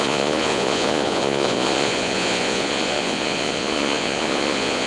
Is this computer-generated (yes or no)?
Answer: yes